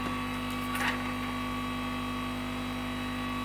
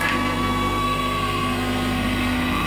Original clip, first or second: first